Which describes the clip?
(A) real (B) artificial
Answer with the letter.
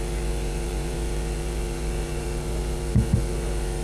B